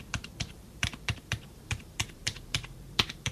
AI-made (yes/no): yes